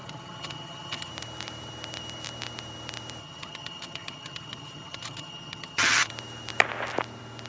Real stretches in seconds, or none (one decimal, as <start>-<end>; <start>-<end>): 1.1-3.2; 6.1-7.5